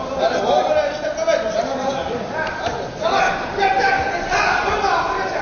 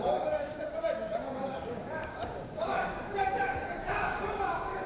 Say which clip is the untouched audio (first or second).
first